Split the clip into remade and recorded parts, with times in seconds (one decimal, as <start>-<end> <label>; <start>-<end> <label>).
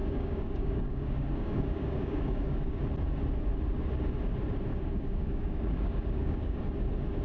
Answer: 0.0-2.8 remade; 2.8-4.7 recorded; 4.7-6.6 remade; 6.6-7.2 recorded